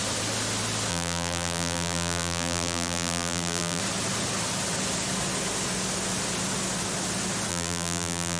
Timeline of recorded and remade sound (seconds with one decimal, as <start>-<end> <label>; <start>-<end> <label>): 0.0-0.9 recorded; 0.9-3.8 remade; 3.8-7.5 recorded; 7.5-8.4 remade